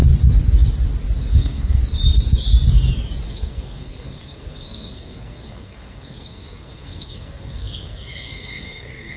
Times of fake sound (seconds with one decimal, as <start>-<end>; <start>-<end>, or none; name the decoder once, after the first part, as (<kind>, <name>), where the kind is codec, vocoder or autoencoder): 1.2-1.8 (codec, SNAC); 3.3-9.2